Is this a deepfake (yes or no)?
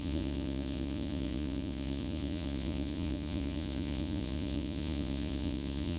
yes